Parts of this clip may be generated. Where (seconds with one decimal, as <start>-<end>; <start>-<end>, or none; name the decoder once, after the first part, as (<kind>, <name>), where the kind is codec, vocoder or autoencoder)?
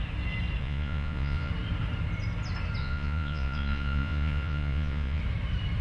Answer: 0.6-1.5 (vocoder, Vocos); 2.8-5.2